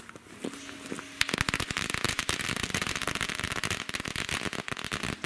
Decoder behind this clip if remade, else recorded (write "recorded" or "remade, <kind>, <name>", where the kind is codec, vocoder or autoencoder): recorded